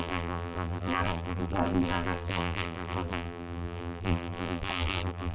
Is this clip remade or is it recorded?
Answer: remade